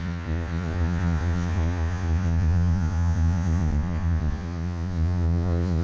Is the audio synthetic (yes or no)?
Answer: yes